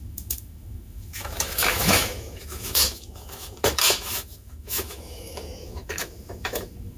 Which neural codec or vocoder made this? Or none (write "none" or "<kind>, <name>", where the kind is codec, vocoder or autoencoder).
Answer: autoencoder, DAC-VAE